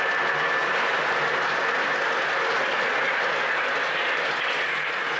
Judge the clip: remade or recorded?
recorded